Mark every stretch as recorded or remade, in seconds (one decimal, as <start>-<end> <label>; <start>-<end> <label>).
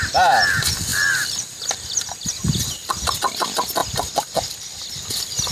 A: 0.0-5.5 recorded